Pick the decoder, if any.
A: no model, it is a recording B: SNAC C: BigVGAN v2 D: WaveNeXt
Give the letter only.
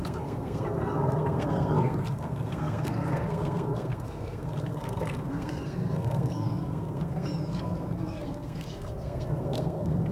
B